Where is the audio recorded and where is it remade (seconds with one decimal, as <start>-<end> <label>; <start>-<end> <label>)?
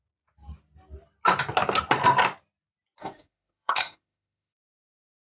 0.0-3.0 recorded; 3.0-4.6 remade; 4.6-5.2 recorded